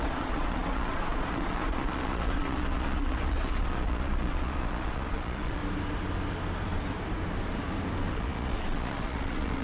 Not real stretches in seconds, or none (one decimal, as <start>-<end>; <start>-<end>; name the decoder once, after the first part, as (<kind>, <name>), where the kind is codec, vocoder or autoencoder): 0.0-5.6 (vocoder, Vocos); 8.1-9.6